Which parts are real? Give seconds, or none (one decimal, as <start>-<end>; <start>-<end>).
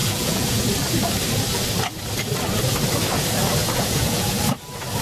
0.6-3.6; 4.4-5.0